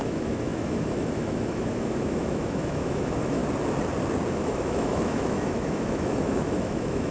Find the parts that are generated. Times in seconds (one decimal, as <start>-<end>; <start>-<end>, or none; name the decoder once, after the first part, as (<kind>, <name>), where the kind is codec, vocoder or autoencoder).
0.0-3.4 (autoencoder, DAC-VAE); 4.3-7.1

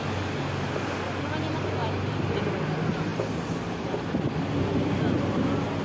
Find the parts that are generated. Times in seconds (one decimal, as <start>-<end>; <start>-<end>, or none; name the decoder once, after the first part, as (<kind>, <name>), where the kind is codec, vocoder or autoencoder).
1.8-2.3 (vocoder, BigVGAN v2); 3.1-3.9

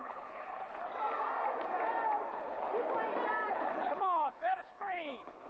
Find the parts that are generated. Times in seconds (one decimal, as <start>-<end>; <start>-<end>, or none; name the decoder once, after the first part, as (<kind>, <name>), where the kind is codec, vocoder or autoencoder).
0.0-0.9 (codec, HILCodec); 2.3-2.7; 3.5-5.5

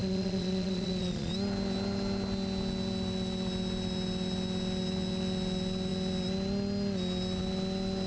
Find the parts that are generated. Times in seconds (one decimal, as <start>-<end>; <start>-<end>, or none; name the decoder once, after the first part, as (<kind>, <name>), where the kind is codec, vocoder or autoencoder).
0.0-1.3 (vocoder, Vocos)